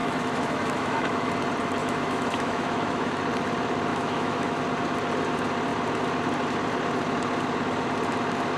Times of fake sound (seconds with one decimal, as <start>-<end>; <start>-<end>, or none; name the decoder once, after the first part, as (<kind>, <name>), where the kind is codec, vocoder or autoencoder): 0.0-1.3 (autoencoder, DAC-VAE); 1.8-3.2; 3.9-4.6